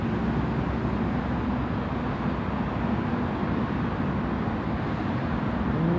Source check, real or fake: real